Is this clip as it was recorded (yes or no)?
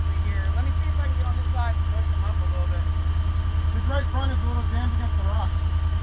yes